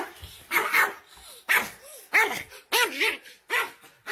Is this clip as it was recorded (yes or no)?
yes